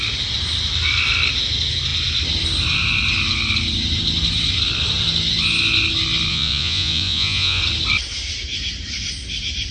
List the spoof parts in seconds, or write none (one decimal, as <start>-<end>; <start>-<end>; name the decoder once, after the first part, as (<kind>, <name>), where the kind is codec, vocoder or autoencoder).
6.3-7.6 (vocoder, Vocos)